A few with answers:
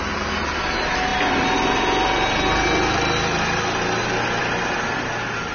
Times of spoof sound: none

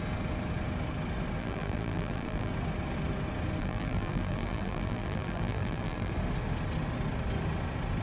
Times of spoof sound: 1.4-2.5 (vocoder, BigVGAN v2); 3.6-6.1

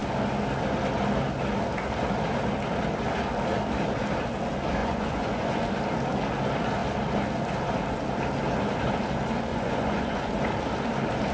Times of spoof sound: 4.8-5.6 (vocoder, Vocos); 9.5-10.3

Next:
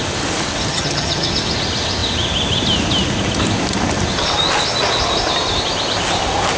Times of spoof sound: 0.7-1.3 (vocoder, HiFi-GAN)

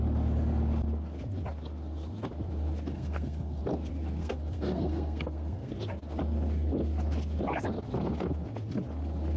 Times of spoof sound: 2.9-3.6 (codec, SNAC); 4.2-5.7

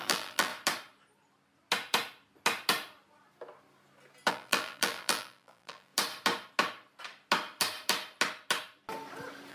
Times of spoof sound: 0.0-0.5 (vocoder, BigVGAN v2); 4.3-5.9